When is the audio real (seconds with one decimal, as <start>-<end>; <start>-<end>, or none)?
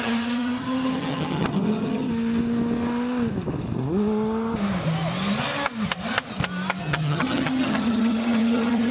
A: 2.1-6.8